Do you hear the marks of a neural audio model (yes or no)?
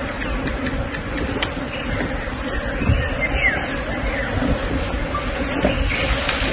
no